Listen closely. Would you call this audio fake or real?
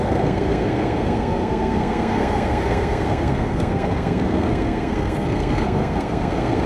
fake